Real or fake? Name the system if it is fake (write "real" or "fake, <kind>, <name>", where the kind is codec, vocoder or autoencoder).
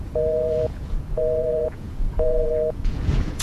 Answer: fake, vocoder, Vocos